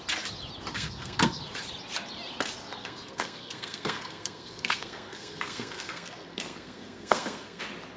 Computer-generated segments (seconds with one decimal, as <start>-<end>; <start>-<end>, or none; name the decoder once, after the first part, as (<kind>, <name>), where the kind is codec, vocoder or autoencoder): 0.7-1.4 (codec, SNAC); 2.8-7.6